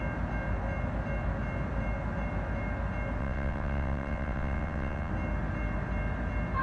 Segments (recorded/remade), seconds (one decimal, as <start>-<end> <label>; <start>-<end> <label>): 0.0-3.2 recorded; 3.2-5.1 remade; 5.1-6.6 recorded